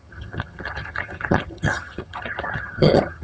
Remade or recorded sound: remade